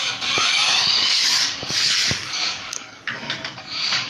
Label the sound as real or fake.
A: fake